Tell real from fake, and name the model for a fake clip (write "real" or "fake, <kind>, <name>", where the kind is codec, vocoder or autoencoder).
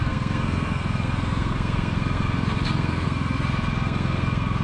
fake, codec, SNAC